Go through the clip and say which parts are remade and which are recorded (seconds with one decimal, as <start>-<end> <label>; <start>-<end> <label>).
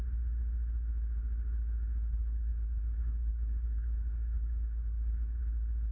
0.0-2.1 recorded; 2.1-5.4 remade; 5.4-5.9 recorded